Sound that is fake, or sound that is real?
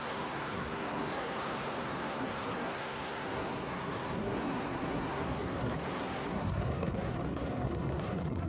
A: fake